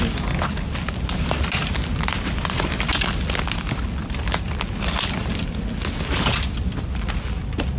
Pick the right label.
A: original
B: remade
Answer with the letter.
A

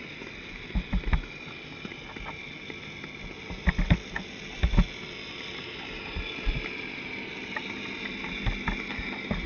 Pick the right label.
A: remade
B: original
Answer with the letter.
B